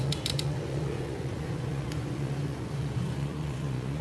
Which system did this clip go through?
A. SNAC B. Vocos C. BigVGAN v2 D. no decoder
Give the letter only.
B